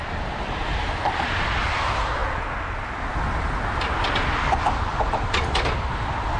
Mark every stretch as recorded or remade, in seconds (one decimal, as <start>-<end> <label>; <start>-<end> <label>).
0.0-6.4 recorded